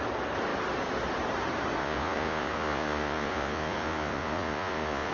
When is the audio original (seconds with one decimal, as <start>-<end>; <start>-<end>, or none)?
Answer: 0.0-1.8